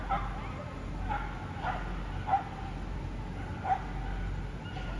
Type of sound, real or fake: real